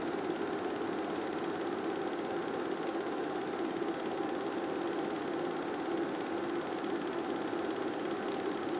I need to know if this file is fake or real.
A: real